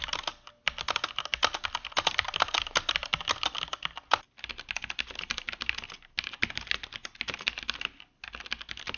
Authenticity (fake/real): real